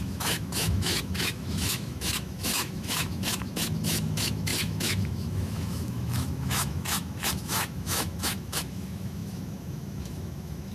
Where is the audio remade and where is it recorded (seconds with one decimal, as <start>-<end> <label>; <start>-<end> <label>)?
0.0-10.7 remade